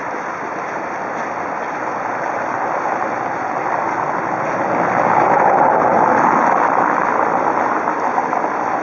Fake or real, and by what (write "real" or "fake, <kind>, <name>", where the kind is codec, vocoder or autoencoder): real